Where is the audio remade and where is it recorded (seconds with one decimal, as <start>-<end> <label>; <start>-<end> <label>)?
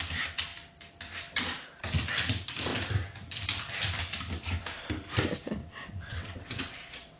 0.0-5.6 recorded; 5.6-7.2 remade